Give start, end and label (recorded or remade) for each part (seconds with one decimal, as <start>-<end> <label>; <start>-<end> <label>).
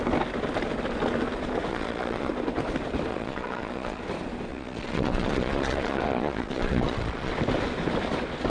0.0-1.7 recorded; 1.7-2.3 remade; 2.3-3.1 recorded; 3.1-4.0 remade; 4.0-4.5 recorded; 4.5-7.3 remade; 7.3-8.5 recorded